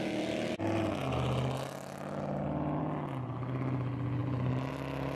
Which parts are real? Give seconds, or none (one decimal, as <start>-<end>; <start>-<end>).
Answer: 0.0-5.2

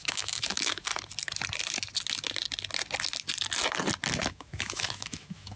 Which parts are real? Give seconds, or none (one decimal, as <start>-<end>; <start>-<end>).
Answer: 0.9-4.3

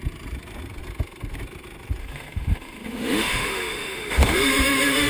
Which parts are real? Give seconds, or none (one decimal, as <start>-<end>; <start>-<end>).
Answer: 0.0-2.0

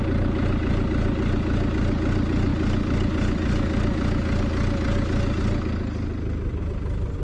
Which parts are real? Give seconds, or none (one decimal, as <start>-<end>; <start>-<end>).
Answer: 0.0-7.2